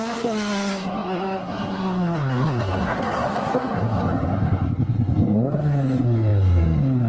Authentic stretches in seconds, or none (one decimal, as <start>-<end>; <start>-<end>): none